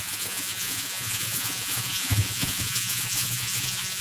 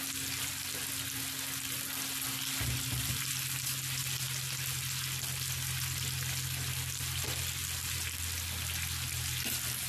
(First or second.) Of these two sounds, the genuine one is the second